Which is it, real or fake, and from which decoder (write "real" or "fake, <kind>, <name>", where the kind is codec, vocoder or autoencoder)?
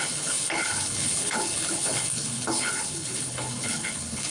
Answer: fake, codec, HILCodec